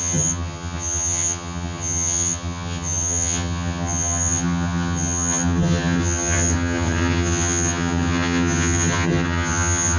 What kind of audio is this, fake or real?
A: fake